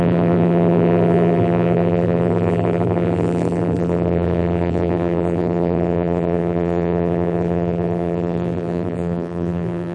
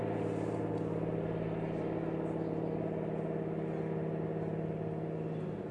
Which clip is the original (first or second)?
second